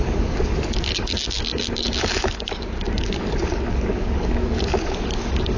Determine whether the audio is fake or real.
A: fake